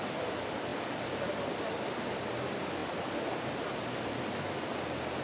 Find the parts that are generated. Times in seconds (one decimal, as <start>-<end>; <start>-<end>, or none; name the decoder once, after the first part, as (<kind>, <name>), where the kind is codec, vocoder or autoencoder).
none